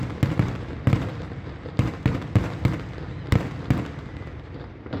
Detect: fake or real real